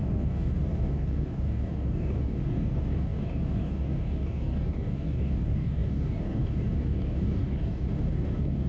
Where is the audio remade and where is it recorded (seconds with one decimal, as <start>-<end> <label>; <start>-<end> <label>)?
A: 0.0-8.7 remade